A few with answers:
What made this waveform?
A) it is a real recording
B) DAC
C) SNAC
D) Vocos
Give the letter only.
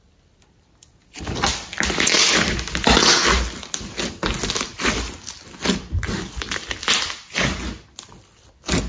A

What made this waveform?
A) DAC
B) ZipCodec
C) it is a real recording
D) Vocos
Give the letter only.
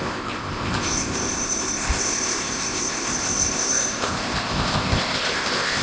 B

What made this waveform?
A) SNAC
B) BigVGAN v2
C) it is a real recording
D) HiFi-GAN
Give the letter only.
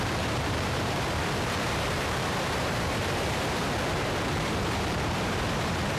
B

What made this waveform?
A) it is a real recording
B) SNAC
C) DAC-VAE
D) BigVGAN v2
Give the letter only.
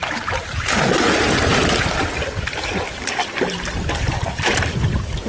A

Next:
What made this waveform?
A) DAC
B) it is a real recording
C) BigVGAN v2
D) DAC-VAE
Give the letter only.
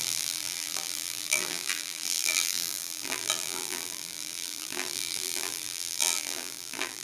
C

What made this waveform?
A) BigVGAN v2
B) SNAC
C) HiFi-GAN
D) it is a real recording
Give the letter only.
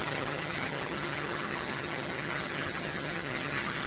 C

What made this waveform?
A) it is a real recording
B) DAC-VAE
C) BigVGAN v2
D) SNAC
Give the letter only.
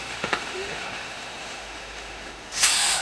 B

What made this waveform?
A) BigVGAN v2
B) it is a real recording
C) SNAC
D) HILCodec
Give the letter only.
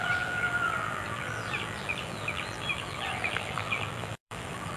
A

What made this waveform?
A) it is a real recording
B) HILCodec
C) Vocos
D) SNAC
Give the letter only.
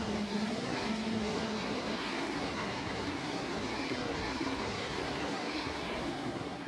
D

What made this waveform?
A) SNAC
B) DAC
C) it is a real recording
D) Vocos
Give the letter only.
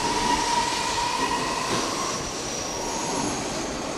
C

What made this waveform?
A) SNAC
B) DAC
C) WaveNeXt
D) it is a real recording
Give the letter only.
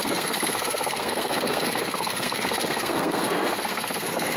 A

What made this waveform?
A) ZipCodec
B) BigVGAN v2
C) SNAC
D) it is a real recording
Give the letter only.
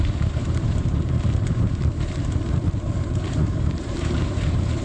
B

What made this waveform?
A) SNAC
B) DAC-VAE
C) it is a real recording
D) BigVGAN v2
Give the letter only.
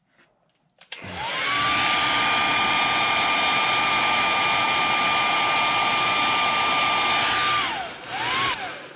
C